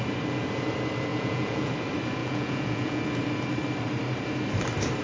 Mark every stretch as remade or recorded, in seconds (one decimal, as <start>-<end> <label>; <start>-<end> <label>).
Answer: 0.0-1.1 recorded; 1.1-1.7 remade; 1.7-2.2 recorded; 2.2-3.0 remade; 3.0-5.0 recorded